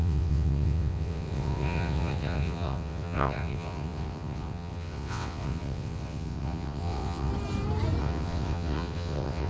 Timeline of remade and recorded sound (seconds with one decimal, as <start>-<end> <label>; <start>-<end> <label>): 0.0-7.3 remade; 7.3-8.0 recorded; 8.0-9.5 remade

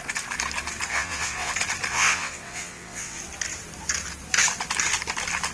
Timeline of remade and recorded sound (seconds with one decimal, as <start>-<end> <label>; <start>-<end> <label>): 0.0-0.9 recorded; 0.9-1.5 remade; 1.5-1.9 recorded; 1.9-3.2 remade; 3.2-5.5 recorded

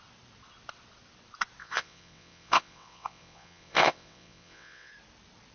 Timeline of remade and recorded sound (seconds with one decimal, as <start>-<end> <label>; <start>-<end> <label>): 0.0-1.6 recorded; 1.6-4.9 remade; 4.9-5.5 recorded

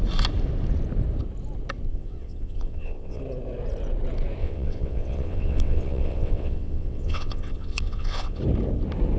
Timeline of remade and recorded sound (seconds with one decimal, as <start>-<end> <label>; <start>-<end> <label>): 0.0-1.9 recorded; 1.9-3.2 remade; 3.2-4.4 recorded; 4.4-8.4 remade; 8.4-9.2 recorded